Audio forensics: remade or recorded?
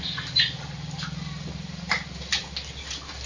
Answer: recorded